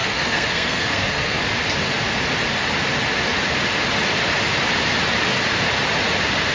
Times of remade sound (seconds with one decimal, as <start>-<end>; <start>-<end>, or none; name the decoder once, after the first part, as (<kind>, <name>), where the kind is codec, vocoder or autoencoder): 0.0-1.4 (codec, SNAC)